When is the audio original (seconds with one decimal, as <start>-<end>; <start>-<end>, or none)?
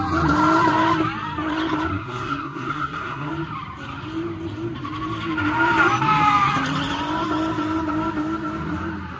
0.0-1.9; 3.3-9.2